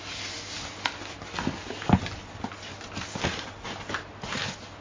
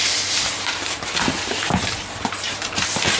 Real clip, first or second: first